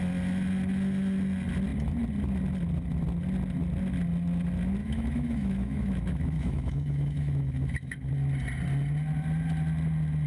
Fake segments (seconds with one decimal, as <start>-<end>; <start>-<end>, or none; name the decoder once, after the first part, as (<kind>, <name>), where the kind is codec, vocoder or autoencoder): 4.8-8.1 (autoencoder, DAC-VAE)